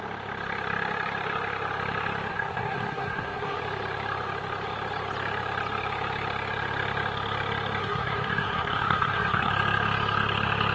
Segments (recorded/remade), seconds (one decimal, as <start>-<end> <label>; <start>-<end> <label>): 0.0-2.3 recorded; 2.3-3.6 remade; 3.6-7.8 recorded; 7.8-9.5 remade; 9.5-10.7 recorded